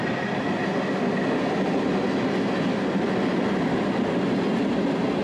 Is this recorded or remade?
recorded